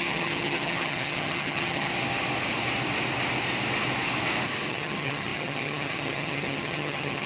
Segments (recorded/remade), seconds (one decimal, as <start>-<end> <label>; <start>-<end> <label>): 0.0-1.9 remade; 1.9-4.7 recorded; 4.7-7.3 remade